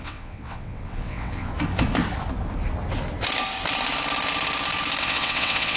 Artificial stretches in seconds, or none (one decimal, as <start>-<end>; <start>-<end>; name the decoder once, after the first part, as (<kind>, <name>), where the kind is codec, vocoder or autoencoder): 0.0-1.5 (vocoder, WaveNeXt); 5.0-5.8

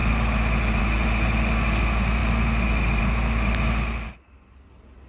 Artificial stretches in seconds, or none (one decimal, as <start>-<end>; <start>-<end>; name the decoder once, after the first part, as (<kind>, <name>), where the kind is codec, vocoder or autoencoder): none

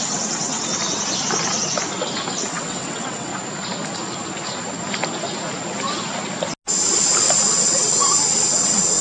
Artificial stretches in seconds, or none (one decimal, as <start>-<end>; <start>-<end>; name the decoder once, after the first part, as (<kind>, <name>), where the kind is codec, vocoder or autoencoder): 0.0-0.7 (vocoder, WaveNeXt); 2.3-3.3; 7.5-9.0

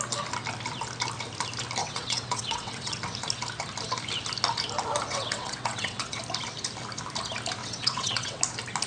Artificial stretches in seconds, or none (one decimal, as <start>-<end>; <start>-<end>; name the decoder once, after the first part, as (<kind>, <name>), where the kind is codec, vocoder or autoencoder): 1.8-3.0 (vocoder, WaveNeXt); 5.1-6.2; 7.6-8.4

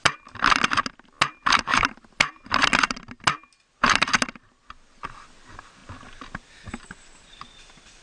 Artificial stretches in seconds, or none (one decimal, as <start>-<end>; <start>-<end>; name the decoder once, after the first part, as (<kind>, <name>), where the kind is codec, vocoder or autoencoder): none

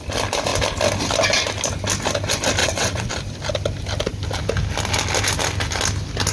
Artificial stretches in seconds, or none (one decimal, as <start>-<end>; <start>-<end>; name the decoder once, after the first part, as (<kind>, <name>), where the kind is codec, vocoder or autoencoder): 2.6-3.1 (vocoder, WaveNeXt)

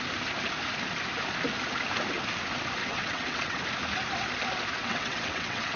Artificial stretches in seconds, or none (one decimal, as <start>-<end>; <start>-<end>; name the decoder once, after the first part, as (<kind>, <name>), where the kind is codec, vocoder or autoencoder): 2.8-3.6 (vocoder, WaveNeXt); 4.8-5.8